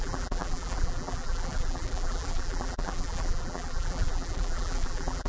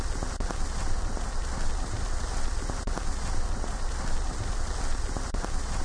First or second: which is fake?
first